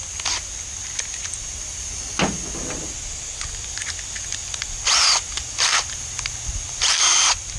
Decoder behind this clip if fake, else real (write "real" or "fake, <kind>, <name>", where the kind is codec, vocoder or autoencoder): real